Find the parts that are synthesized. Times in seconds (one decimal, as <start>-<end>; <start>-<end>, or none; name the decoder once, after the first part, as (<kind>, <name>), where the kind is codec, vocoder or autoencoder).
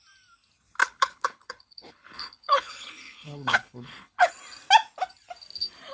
0.8-4.3 (codec, HILCodec)